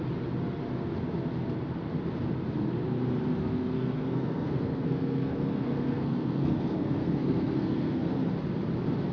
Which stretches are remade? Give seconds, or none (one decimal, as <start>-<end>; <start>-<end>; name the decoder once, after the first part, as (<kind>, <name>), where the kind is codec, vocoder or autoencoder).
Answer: 3.4-8.3 (codec, SNAC)